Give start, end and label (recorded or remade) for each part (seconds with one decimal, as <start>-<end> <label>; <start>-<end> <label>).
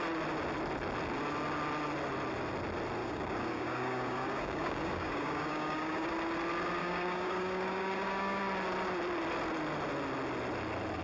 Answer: 0.0-3.0 recorded; 3.0-6.1 remade; 6.1-6.8 recorded; 6.8-8.4 remade; 8.4-11.0 recorded